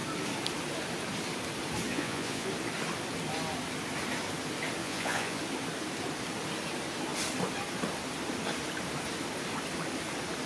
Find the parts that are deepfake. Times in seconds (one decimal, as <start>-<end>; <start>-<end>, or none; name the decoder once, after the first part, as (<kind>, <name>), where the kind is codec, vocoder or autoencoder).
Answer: 1.9-2.5 (vocoder, Vocos); 4.8-5.4